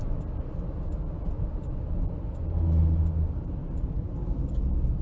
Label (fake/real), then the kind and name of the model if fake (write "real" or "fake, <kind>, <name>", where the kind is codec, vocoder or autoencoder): real